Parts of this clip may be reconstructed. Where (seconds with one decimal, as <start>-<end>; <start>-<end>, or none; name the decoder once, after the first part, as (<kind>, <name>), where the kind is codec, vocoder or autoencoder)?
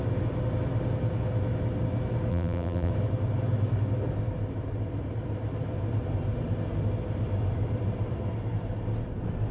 2.3-2.9 (vocoder, BigVGAN v2)